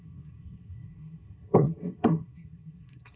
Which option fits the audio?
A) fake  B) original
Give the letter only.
A